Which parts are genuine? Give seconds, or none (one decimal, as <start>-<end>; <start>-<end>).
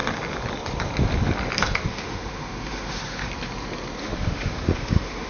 0.0-1.9; 3.3-4.0